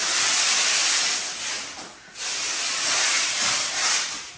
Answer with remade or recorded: recorded